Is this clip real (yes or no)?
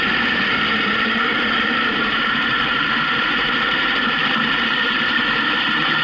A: no